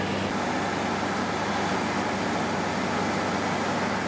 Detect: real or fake real